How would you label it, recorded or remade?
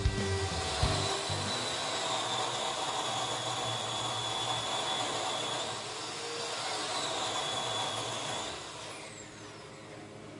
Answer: recorded